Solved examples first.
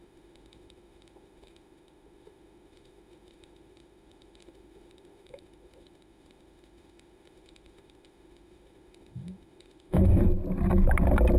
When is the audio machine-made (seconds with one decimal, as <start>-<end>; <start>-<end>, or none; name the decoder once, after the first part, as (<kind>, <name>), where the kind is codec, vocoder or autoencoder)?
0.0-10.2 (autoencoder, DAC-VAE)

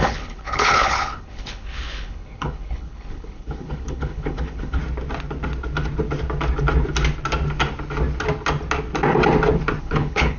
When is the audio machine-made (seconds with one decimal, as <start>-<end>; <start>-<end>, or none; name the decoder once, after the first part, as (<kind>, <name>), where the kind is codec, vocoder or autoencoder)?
0.0-4.8 (codec, HILCodec); 9.8-10.4

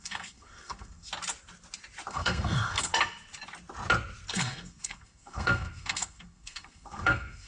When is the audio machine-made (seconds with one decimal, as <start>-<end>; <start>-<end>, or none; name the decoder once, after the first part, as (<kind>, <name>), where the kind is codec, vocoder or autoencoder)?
0.0-1.1 (codec, SNAC); 2.1-2.9; 4.3-7.5